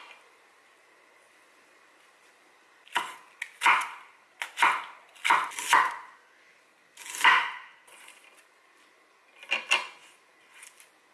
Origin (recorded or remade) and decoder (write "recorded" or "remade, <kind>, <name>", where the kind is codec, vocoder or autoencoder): recorded